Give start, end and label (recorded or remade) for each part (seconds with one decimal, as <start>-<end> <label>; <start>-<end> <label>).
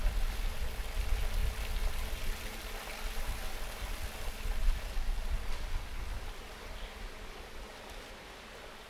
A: 0.0-8.9 recorded